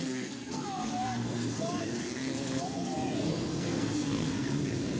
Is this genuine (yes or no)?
no